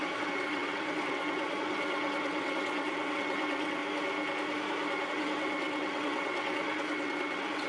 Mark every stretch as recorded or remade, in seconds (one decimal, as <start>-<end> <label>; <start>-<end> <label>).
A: 0.0-3.8 remade; 3.8-5.1 recorded; 5.1-7.7 remade